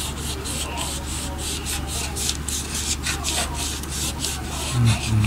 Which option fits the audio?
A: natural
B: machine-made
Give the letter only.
A